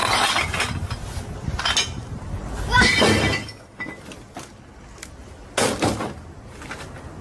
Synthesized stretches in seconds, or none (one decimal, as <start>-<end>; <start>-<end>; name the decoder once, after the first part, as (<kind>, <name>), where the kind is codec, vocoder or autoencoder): none

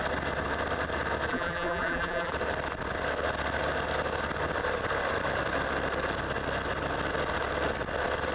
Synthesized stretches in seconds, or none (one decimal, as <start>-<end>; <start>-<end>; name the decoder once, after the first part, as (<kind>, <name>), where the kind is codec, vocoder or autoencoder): 1.3-2.3 (vocoder, BigVGAN v2)

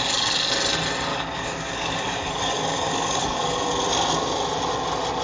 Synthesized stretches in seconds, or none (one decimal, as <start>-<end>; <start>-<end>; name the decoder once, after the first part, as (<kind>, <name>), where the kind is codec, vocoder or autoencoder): 1.1-3.7 (codec, DAC)

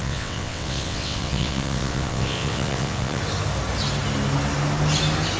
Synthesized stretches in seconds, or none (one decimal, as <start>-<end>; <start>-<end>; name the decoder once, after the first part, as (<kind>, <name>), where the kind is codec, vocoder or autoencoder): 0.0-3.2 (vocoder, WaveNeXt)

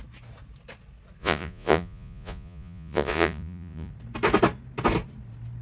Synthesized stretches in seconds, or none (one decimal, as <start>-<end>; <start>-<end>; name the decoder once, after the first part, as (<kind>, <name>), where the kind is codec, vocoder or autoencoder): 1.2-3.9 (vocoder, Vocos)